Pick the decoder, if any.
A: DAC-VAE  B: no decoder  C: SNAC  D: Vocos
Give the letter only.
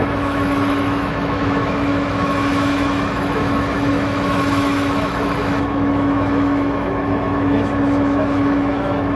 A